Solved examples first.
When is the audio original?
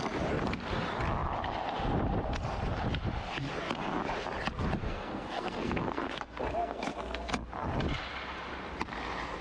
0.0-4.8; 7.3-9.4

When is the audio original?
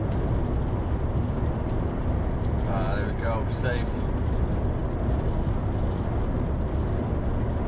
0.0-7.7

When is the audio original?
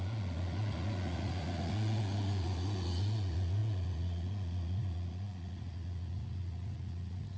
none